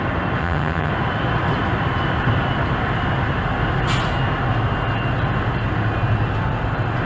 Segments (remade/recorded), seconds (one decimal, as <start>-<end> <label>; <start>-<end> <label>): 0.0-0.4 recorded; 0.4-0.9 remade; 0.9-7.1 recorded